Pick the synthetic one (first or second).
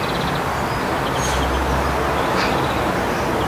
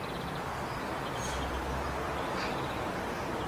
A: second